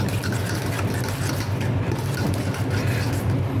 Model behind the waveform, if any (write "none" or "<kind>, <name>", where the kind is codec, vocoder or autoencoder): none